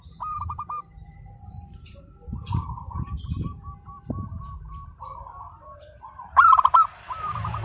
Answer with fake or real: fake